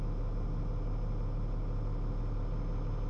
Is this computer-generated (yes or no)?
no